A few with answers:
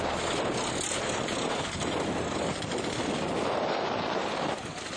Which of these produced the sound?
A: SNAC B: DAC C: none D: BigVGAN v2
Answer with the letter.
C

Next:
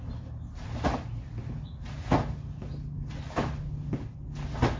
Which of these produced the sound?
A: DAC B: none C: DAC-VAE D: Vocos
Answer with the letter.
B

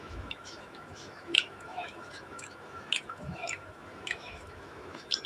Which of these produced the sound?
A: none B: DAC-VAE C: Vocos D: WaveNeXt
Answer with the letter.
B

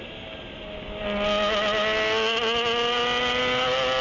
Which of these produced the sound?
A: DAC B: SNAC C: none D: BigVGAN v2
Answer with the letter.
C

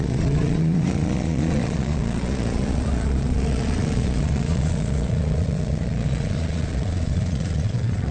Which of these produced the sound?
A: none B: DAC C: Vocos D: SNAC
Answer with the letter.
C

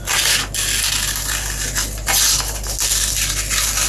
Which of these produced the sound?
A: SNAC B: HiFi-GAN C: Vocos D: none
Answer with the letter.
D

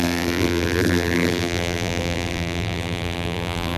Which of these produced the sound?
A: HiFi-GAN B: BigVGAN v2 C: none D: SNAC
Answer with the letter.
B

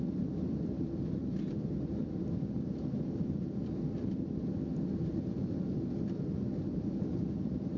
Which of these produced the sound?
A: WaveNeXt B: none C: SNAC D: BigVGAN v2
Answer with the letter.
B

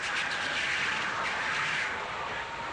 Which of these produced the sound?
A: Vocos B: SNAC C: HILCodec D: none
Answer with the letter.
D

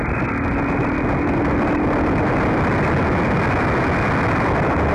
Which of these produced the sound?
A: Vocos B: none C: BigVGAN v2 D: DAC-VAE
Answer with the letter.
B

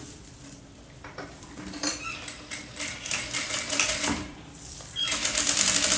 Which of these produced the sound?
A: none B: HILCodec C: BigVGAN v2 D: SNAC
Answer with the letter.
C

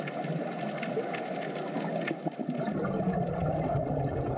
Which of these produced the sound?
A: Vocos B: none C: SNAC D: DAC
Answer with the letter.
B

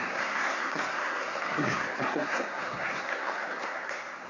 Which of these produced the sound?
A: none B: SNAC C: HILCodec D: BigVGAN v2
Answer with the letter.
B